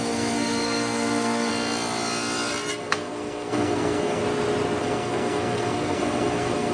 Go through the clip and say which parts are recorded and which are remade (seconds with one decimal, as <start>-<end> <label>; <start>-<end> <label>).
0.0-1.5 remade; 1.5-2.7 recorded; 2.7-4.2 remade; 4.2-4.8 recorded; 4.8-6.7 remade